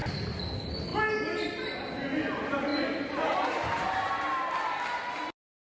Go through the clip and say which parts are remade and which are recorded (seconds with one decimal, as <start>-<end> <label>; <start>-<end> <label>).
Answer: 0.0-5.6 recorded